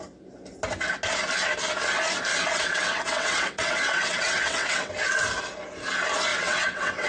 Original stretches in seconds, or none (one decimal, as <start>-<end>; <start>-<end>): 0.0-2.3; 4.9-6.3